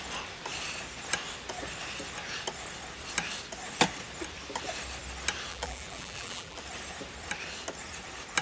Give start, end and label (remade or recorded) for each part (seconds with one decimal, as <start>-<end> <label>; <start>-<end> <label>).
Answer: 0.0-5.5 recorded; 5.5-6.6 remade; 6.6-8.4 recorded